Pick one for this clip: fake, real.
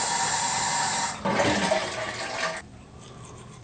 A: real